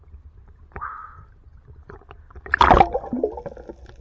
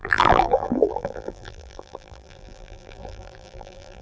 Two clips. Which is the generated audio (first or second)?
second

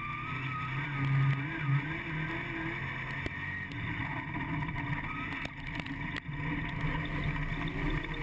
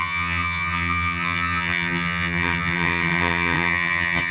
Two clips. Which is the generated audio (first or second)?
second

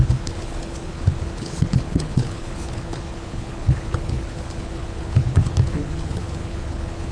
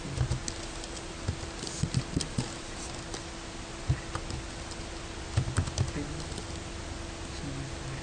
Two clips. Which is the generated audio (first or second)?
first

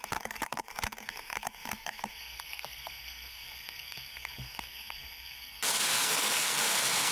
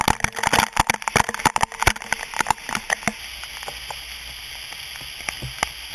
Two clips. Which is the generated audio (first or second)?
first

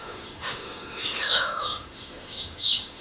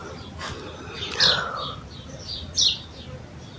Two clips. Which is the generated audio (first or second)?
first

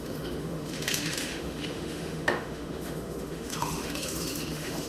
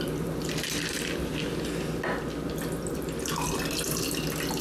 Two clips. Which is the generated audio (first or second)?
first